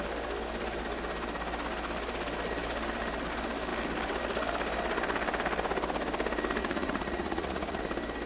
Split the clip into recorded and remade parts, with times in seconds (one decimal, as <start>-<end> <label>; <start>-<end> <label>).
0.0-6.6 recorded; 6.6-7.8 remade; 7.8-8.3 recorded